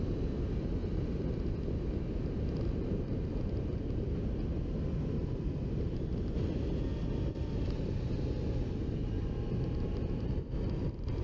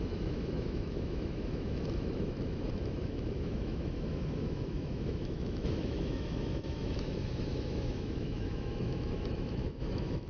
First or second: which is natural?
first